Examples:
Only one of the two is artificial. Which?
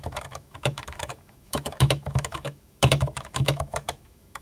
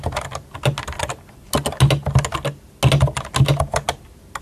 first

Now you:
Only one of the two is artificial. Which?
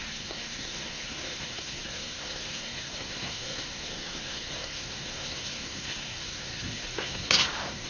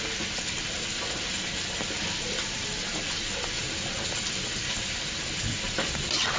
first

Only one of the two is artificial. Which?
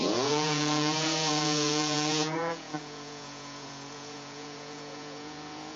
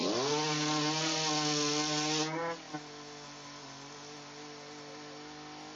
first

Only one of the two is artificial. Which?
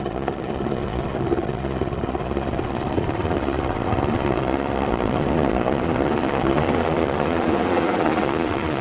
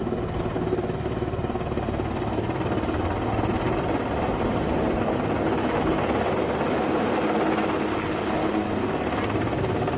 first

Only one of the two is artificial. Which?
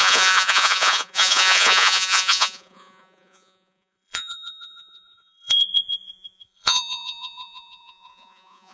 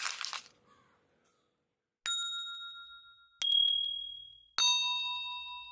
first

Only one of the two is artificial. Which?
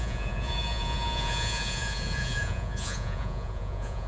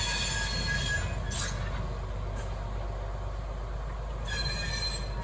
first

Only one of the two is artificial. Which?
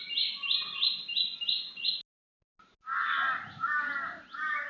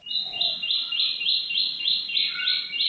second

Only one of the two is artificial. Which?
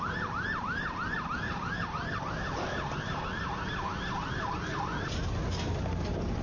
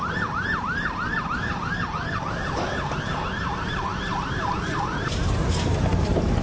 second